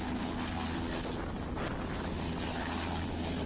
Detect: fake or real real